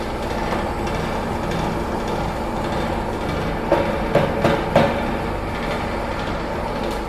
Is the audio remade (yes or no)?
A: no